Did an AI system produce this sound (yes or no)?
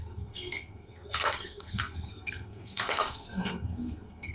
yes